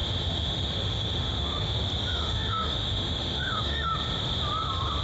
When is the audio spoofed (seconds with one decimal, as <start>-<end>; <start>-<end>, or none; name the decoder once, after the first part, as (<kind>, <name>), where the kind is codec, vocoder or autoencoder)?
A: 0.0-1.7 (autoencoder, DAC-VAE); 2.1-3.9